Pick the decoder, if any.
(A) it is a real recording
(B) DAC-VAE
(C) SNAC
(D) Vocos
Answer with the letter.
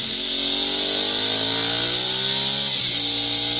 A